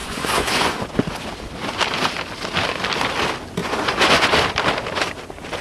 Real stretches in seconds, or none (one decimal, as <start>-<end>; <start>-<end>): 0.8-3.6; 4.3-5.6